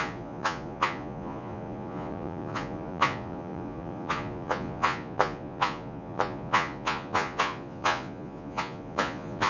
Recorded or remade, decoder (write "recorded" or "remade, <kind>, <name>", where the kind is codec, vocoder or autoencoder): remade, vocoder, Vocos